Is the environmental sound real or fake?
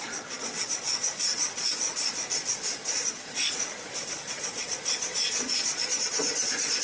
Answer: fake